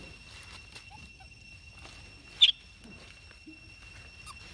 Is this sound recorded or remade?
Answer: recorded